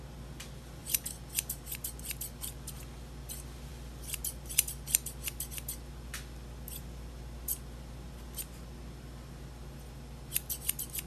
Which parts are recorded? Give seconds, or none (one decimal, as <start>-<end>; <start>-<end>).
0.0-11.1